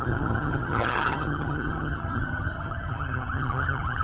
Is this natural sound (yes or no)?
no